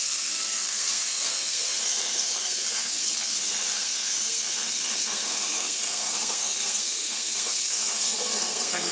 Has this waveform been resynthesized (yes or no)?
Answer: yes